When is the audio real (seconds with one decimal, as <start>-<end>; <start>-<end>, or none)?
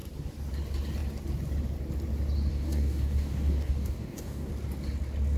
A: 0.0-2.5; 4.5-5.4